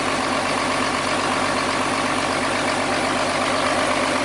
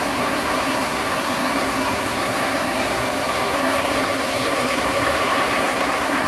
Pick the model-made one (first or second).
second